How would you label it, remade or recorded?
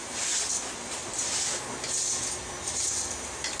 recorded